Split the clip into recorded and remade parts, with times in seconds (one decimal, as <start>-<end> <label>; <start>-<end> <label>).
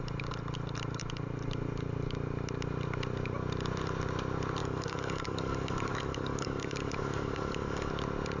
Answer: 0.0-4.6 recorded; 4.6-7.9 remade; 7.9-8.4 recorded